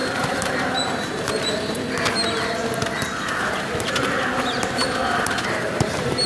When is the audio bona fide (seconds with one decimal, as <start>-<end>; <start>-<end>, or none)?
1.2-5.0